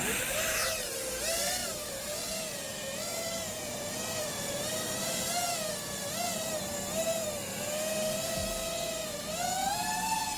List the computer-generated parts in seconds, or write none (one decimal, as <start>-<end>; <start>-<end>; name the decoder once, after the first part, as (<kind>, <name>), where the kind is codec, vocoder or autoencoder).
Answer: 1.6-6.5 (vocoder, BigVGAN v2); 9.6-10.4